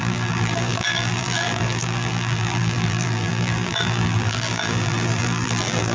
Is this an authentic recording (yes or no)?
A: no